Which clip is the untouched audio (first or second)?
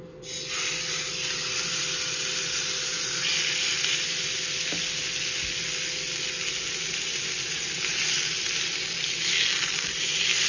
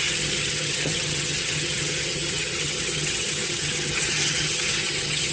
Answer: first